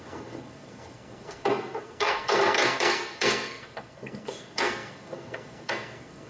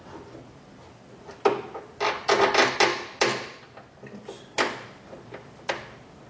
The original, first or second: second